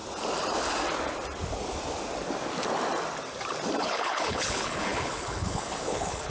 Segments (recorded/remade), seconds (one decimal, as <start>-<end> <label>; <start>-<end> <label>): 0.0-3.8 recorded; 3.8-6.3 remade